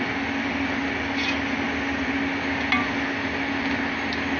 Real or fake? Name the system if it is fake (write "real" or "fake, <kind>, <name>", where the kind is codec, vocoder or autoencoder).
real